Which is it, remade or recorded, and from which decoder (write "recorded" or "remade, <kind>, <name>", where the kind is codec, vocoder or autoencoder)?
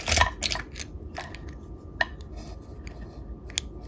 recorded